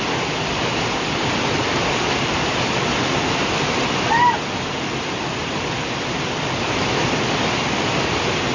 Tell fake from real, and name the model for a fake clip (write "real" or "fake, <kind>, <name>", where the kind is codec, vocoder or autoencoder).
real